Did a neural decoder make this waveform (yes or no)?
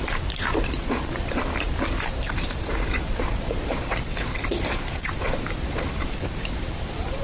yes